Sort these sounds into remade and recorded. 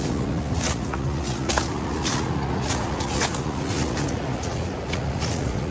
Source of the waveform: remade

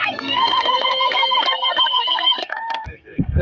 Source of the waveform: remade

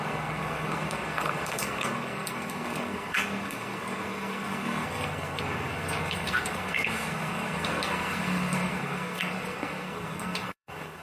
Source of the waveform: remade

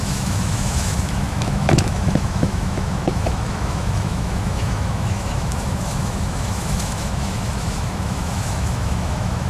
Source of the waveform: remade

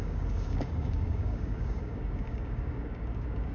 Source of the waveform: remade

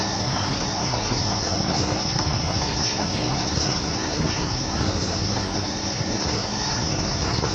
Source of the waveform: remade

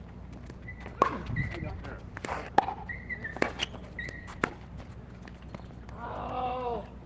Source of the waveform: recorded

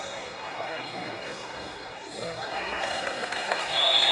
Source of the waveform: remade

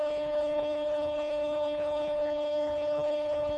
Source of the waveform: remade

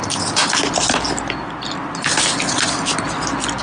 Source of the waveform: recorded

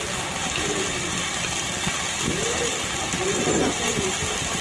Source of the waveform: recorded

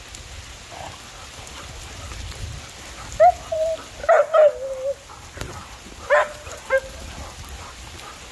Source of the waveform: recorded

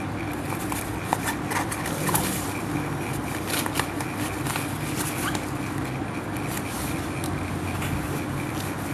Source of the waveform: recorded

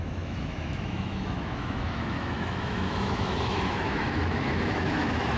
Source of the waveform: remade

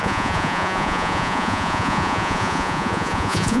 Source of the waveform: remade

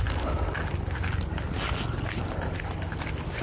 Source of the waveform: recorded